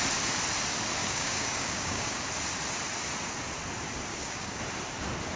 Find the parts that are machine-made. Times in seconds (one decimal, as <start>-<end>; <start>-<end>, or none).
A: 1.0-2.3; 4.1-4.6